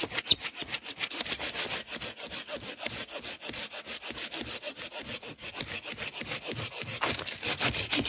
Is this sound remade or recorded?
recorded